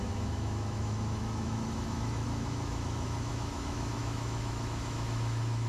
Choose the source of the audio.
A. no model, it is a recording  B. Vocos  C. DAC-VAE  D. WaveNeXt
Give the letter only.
C